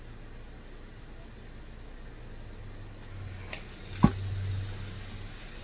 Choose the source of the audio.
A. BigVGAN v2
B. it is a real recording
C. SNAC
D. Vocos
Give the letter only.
B